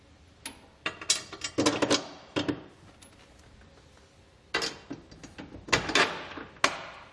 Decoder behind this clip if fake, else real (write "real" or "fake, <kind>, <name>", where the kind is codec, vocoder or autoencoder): real